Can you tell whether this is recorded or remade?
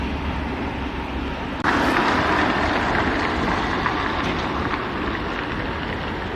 recorded